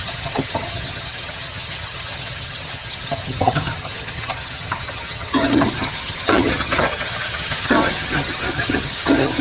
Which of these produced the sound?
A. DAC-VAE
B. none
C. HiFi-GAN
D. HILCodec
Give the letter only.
C